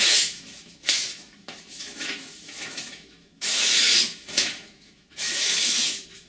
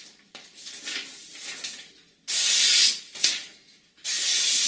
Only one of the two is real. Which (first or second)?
second